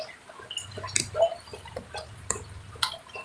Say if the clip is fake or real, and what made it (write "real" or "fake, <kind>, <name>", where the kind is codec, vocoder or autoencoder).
real